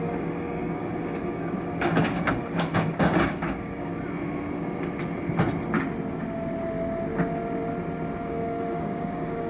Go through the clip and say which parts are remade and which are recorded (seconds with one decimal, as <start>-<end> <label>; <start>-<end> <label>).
0.0-3.9 remade; 3.9-8.2 recorded; 8.2-9.5 remade